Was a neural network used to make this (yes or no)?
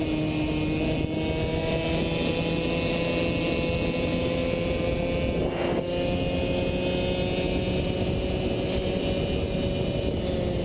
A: no